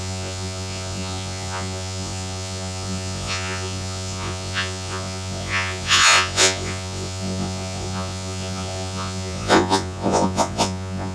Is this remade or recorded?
remade